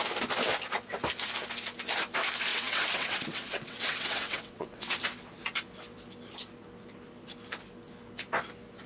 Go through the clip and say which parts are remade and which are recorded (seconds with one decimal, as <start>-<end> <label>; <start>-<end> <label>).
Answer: 0.0-2.5 recorded; 2.5-5.0 remade; 5.0-8.9 recorded